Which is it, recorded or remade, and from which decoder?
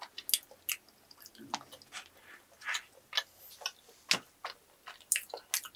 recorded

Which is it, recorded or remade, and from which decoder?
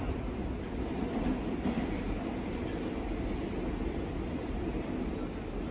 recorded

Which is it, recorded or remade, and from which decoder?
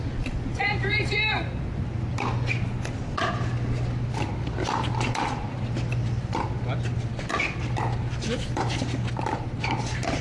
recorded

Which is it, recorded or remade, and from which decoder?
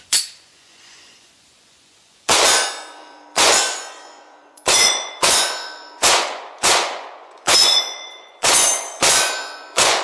remade, vocoder, Vocos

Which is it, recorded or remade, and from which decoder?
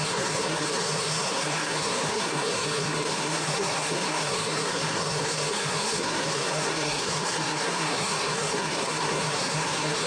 remade, codec, SNAC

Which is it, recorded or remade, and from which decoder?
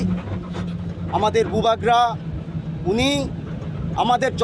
recorded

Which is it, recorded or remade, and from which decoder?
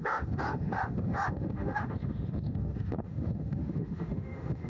remade, autoencoder, DAC-VAE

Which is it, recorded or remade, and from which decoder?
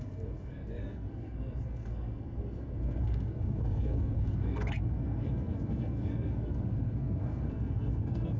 remade, codec, SNAC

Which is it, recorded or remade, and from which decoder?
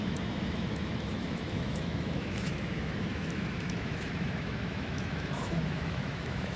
remade, autoencoder, DAC-VAE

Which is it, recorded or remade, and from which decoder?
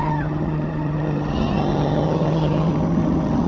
remade, vocoder, HiFi-GAN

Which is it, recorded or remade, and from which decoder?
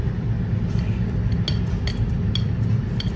recorded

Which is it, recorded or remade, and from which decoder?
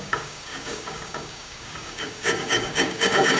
remade, codec, DAC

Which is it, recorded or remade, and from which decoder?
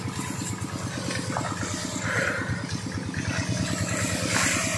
recorded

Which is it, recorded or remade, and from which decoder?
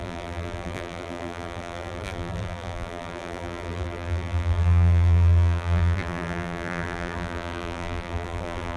remade, vocoder, BigVGAN v2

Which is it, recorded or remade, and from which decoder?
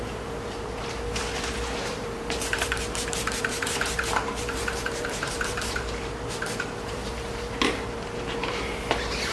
remade, vocoder, BigVGAN v2